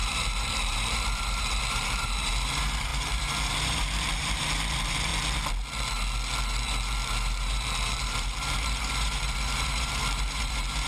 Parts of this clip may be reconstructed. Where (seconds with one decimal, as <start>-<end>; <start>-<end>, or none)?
0.0-5.1; 7.1-10.9